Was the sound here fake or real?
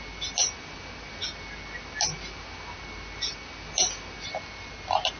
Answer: real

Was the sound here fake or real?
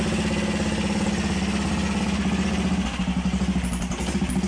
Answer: real